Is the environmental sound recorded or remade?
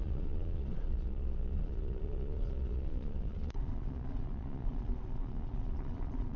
remade